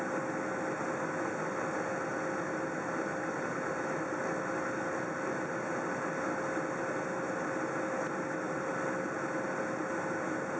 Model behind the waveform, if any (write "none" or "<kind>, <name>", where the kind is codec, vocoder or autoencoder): none